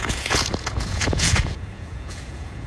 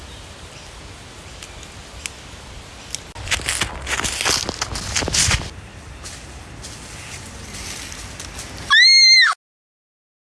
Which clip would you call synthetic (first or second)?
first